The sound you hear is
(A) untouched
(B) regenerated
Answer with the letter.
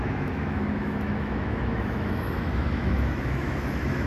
B